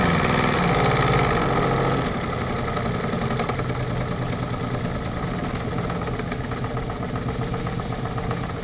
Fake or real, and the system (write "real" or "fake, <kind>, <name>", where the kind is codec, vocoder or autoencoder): real